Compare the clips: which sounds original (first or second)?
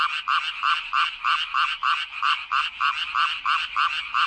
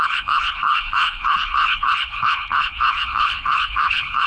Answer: first